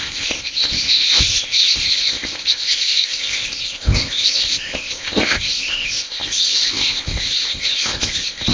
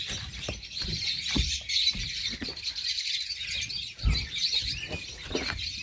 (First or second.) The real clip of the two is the second